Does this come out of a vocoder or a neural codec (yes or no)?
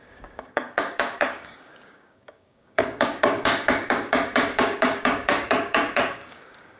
yes